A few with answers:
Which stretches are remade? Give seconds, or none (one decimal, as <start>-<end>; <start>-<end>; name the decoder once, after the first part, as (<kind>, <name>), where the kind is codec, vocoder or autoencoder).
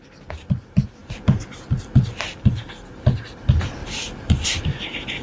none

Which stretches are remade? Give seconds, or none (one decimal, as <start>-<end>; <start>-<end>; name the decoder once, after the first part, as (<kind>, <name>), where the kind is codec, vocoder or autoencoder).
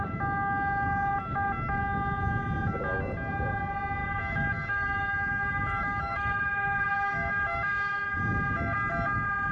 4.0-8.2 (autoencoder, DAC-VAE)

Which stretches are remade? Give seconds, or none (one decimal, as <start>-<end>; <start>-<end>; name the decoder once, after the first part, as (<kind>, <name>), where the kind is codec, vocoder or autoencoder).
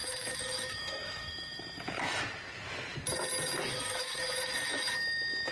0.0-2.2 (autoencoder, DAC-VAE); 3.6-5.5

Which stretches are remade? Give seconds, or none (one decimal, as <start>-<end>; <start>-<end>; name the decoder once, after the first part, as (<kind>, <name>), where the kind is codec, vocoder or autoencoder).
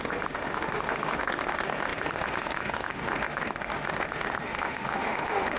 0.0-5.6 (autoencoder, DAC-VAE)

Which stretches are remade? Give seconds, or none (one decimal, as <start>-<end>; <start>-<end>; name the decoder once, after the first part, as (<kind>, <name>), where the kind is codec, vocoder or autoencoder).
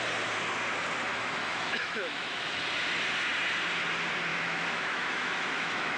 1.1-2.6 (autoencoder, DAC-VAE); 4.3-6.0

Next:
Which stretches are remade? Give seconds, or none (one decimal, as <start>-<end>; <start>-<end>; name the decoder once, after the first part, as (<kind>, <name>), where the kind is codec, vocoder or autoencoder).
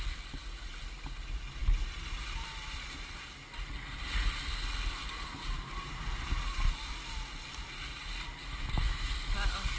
8.4-9.1 (autoencoder, DAC-VAE)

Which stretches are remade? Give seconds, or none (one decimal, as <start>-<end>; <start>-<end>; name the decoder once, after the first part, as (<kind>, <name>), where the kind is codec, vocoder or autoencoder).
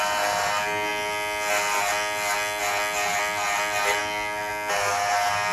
none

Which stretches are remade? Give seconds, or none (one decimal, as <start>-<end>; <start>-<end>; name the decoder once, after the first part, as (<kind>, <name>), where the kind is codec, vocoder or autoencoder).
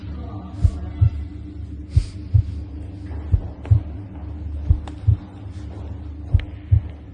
none